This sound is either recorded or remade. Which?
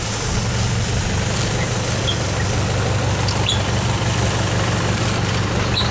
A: recorded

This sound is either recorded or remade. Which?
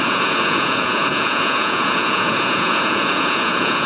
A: remade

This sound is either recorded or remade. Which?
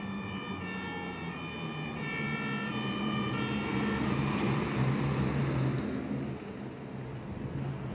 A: recorded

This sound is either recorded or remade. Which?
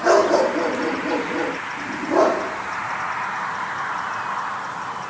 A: recorded